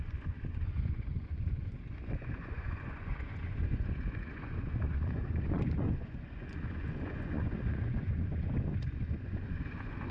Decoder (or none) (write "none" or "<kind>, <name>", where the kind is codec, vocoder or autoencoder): vocoder, Vocos